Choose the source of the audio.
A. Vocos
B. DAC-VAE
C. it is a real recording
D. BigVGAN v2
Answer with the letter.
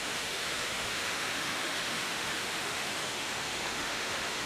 B